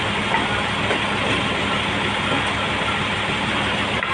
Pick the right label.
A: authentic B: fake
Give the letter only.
A